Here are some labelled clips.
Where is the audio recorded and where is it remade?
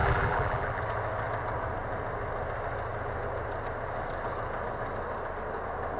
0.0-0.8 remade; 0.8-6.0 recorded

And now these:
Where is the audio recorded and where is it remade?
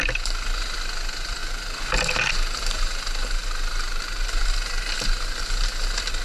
0.0-1.4 remade; 1.4-2.3 recorded; 2.3-3.4 remade; 3.4-5.4 recorded; 5.4-6.2 remade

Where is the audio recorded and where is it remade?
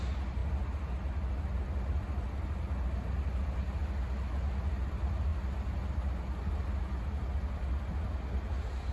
0.0-8.9 recorded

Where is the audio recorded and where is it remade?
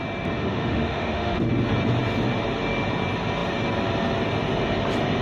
0.0-0.4 recorded; 0.4-1.5 remade; 1.5-5.2 recorded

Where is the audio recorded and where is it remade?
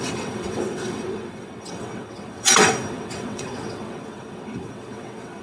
0.0-5.4 remade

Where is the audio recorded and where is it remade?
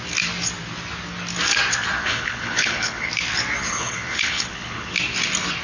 0.0-2.0 recorded; 2.0-3.1 remade; 3.1-3.6 recorded; 3.6-4.9 remade; 4.9-5.6 recorded